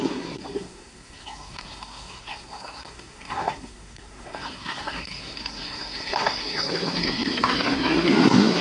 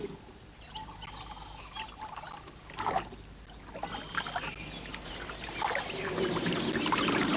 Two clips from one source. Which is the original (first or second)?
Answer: second